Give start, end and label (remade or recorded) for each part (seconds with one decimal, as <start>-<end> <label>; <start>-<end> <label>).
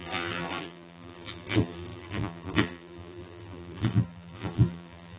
0.0-5.2 remade